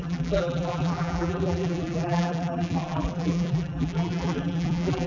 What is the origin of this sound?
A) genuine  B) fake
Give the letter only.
B